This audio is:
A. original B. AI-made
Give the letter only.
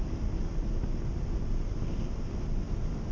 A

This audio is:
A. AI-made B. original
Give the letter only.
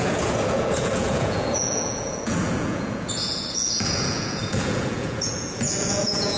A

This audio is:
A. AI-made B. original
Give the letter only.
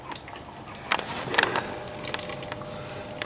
B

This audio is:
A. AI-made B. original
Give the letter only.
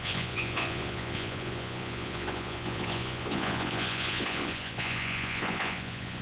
A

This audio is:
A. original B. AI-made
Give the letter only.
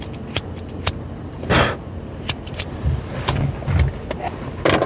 A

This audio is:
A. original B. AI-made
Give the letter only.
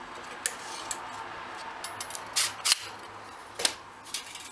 A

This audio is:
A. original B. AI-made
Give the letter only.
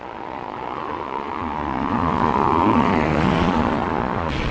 B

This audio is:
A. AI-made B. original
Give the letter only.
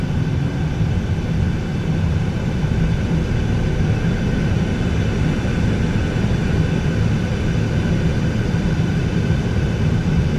B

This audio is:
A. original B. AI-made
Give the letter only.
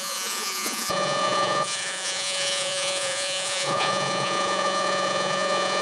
B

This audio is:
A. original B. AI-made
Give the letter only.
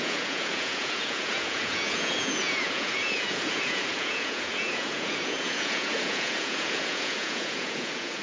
B